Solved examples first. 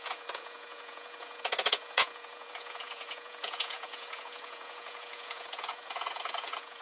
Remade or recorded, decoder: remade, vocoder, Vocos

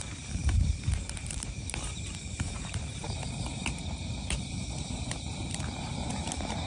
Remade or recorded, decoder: remade, vocoder, BigVGAN v2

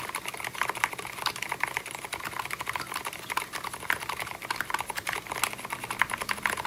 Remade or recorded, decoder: recorded